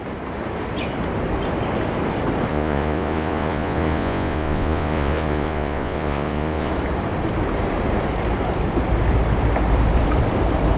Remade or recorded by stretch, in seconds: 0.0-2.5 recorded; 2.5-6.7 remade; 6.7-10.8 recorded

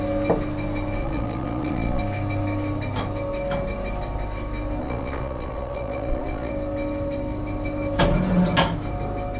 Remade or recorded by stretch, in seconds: 0.0-1.0 recorded; 1.0-2.0 remade; 2.0-4.8 recorded; 4.8-6.5 remade; 6.5-9.4 recorded

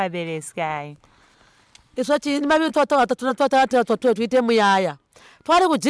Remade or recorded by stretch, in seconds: 0.0-5.9 recorded